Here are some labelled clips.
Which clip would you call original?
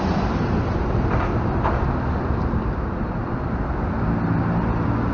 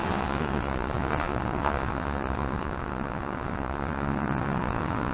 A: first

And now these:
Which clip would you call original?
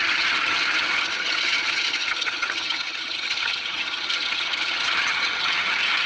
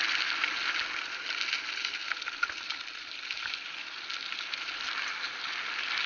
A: second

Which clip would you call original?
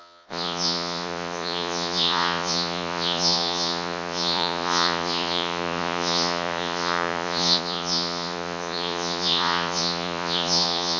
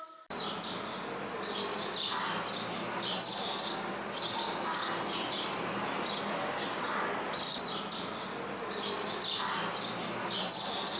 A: second